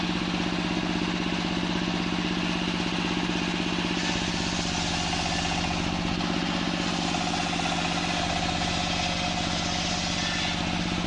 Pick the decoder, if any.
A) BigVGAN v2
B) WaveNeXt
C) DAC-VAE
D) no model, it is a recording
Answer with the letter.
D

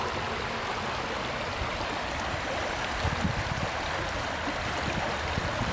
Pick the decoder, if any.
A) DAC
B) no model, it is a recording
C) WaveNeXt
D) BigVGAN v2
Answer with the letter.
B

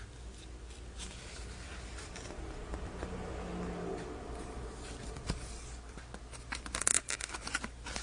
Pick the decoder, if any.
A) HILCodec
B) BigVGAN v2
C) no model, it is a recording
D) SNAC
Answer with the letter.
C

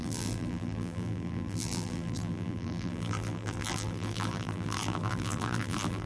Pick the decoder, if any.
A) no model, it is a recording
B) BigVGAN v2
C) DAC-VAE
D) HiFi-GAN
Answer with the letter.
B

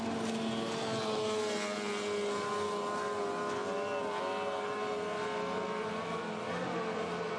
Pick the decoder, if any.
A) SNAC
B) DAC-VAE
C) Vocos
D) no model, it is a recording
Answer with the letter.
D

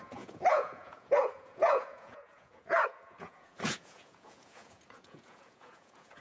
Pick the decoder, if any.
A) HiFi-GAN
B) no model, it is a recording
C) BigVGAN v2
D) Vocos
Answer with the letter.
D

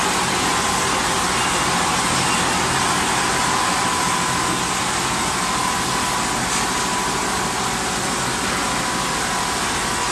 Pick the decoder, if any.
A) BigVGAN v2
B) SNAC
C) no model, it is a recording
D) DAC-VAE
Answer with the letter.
C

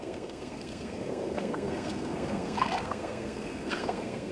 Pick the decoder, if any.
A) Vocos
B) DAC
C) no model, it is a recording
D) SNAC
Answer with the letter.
D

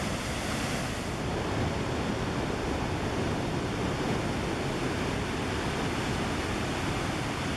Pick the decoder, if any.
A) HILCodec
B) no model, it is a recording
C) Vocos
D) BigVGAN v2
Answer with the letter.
B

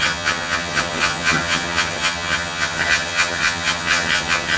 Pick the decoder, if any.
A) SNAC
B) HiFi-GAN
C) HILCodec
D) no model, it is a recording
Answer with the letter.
B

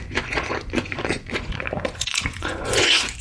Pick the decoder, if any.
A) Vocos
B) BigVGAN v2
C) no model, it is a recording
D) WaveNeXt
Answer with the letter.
A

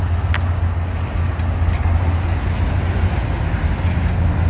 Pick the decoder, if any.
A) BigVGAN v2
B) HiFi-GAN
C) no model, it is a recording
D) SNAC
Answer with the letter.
C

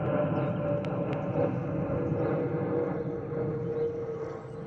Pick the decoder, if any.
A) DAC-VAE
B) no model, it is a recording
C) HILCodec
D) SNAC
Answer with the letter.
B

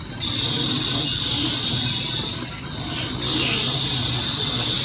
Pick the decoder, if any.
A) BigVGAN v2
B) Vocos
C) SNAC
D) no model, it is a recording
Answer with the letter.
D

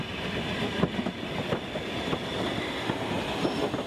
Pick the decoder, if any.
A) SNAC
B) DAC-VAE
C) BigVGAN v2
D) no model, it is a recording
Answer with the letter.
D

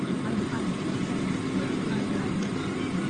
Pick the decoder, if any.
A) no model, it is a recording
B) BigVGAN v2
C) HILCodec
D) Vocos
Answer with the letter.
A